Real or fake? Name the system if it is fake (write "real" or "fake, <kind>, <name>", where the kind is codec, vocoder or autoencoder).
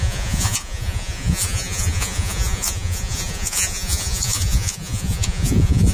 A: fake, vocoder, Vocos